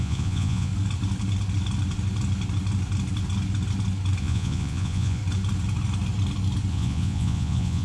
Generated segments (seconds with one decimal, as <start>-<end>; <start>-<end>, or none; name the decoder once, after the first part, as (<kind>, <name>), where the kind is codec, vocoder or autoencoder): 0.0-0.7 (vocoder, Vocos); 4.2-5.2; 6.7-7.8